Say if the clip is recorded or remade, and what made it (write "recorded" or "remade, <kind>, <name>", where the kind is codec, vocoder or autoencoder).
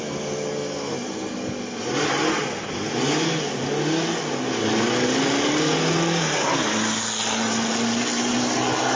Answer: recorded